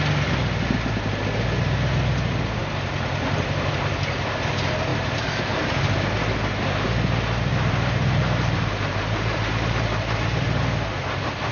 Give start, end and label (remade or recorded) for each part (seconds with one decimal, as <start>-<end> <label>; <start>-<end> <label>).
0.0-4.9 recorded; 4.9-5.8 remade; 5.8-7.5 recorded; 7.5-10.6 remade; 10.6-11.5 recorded